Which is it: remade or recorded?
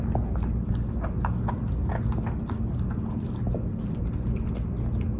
recorded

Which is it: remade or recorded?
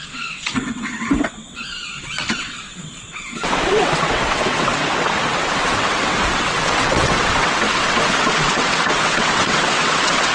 remade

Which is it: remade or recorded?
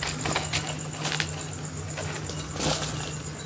recorded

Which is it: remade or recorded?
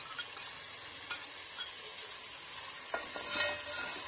recorded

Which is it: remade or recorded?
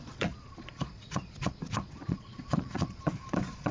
remade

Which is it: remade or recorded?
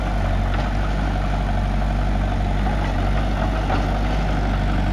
recorded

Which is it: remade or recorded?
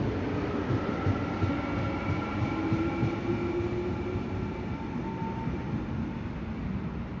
recorded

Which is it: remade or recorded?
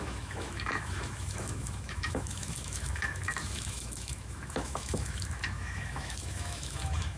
remade